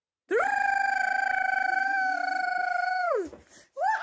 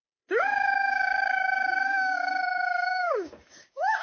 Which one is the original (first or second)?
first